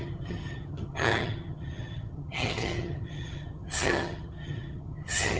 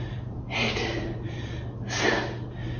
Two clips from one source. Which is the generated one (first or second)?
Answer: first